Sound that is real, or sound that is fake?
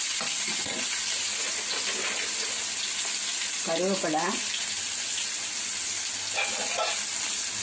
real